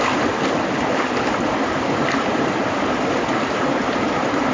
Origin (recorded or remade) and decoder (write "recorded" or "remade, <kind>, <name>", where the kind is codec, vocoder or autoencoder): recorded